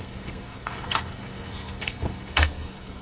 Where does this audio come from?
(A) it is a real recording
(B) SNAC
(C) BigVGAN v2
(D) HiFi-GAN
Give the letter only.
B